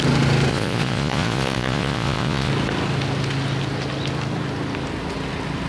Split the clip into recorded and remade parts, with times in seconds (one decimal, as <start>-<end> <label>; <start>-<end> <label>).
0.0-0.5 recorded; 0.5-2.5 remade; 2.5-5.7 recorded